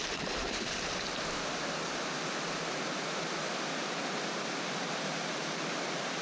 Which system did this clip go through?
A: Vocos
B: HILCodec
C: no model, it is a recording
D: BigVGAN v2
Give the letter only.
C